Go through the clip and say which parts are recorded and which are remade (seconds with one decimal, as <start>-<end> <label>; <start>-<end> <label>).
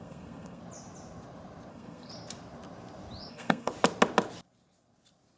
0.0-0.6 remade; 0.6-1.7 recorded; 1.7-2.1 remade; 2.1-3.3 recorded; 3.3-3.7 remade; 3.7-5.4 recorded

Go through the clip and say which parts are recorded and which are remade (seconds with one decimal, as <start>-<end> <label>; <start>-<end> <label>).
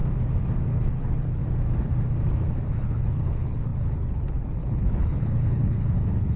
0.0-0.7 recorded; 0.7-1.4 remade; 1.4-2.7 recorded; 2.7-6.4 remade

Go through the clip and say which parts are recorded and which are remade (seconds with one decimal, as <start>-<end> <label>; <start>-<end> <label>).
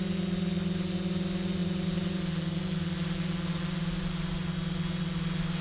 0.0-5.6 recorded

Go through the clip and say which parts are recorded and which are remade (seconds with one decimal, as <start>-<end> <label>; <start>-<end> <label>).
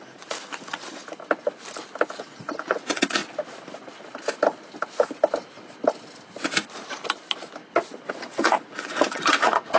0.0-1.0 remade; 1.0-2.2 recorded; 2.2-3.2 remade; 3.2-8.1 recorded; 8.1-9.8 remade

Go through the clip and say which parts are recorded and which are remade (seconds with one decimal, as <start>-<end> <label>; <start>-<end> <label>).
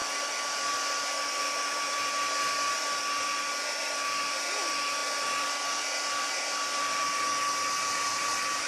0.0-8.7 recorded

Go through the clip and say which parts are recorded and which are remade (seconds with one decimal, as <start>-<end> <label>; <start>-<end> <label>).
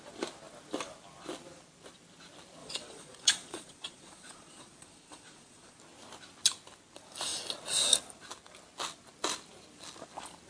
0.0-2.6 recorded; 2.6-5.8 remade; 5.8-10.5 recorded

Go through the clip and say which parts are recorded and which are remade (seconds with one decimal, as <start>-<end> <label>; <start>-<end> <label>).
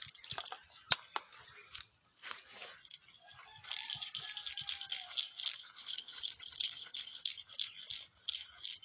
0.0-5.8 recorded; 5.8-7.2 remade; 7.2-8.8 recorded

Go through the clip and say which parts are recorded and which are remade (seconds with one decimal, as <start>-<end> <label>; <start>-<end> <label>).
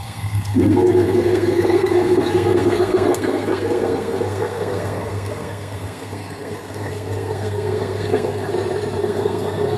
0.0-8.5 remade; 8.5-9.0 recorded; 9.0-9.8 remade